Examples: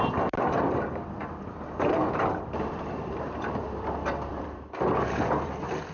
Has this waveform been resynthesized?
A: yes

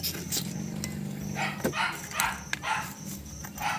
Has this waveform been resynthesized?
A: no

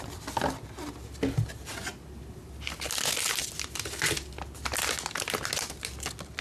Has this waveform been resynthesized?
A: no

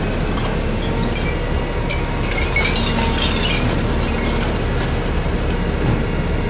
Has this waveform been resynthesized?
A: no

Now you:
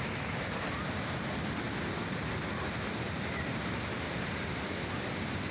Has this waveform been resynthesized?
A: no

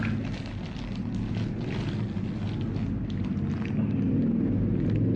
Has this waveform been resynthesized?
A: no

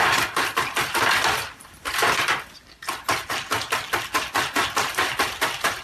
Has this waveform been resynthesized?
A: yes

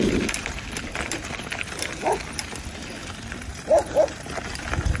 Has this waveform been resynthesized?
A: yes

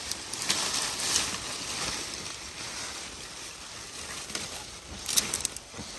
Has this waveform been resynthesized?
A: no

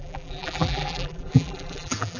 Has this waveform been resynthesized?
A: yes